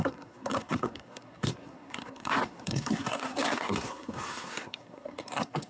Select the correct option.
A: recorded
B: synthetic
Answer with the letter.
B